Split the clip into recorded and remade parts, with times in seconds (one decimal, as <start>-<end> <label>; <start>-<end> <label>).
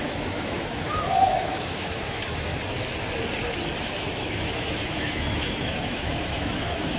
0.0-2.5 remade; 2.5-3.8 recorded; 3.8-7.0 remade